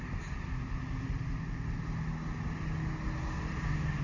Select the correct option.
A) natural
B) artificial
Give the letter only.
A